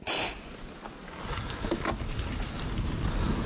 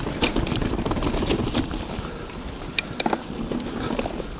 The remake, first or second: second